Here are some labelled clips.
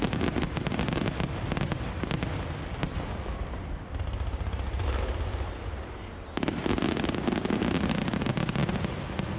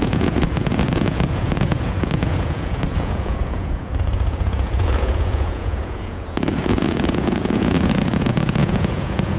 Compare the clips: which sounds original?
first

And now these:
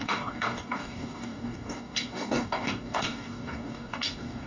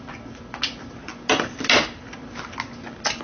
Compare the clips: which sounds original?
second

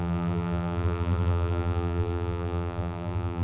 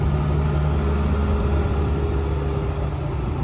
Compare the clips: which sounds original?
second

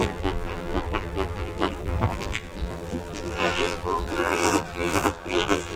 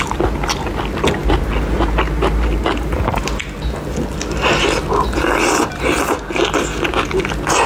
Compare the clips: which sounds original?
second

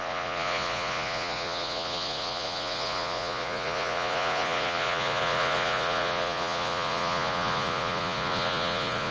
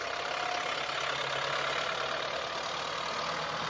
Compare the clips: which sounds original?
second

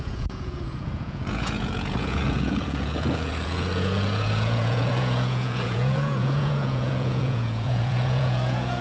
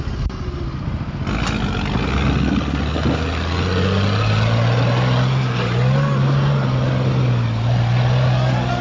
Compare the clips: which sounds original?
second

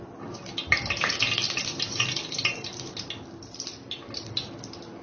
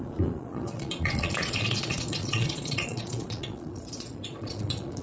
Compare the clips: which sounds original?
first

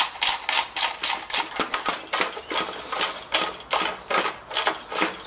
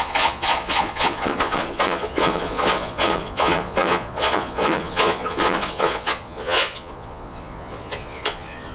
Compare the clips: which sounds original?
first